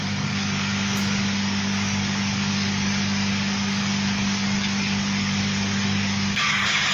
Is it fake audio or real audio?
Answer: fake